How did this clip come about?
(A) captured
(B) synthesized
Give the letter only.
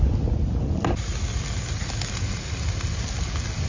A